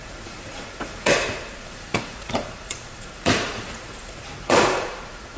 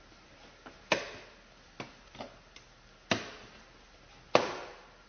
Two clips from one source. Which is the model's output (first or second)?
first